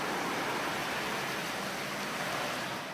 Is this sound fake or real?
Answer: real